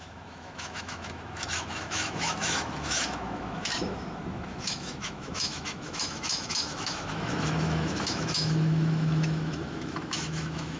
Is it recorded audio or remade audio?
remade